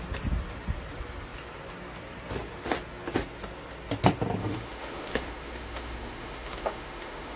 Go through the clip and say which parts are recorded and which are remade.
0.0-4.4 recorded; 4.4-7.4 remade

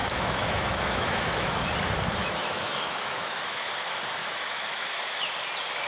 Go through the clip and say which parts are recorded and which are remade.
0.0-1.7 remade; 1.7-2.2 recorded; 2.2-3.7 remade; 3.7-4.2 recorded; 4.2-5.3 remade; 5.3-5.9 recorded

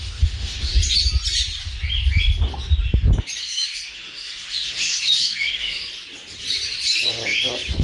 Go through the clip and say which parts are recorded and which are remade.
0.0-0.7 remade; 0.7-3.4 recorded; 3.4-5.8 remade; 5.8-7.8 recorded

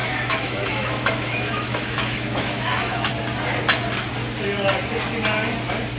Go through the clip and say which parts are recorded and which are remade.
0.0-3.1 remade; 3.1-6.0 recorded